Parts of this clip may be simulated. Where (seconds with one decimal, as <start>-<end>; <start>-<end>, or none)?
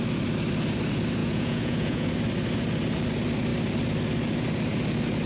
1.2-2.1